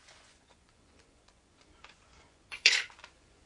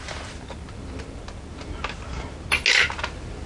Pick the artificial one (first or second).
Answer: first